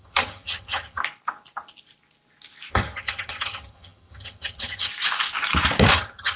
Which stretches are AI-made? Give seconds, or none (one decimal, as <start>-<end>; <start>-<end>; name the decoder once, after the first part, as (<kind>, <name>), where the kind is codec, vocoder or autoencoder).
0.0-1.0 (vocoder, HiFi-GAN); 2.7-4.9; 5.9-6.4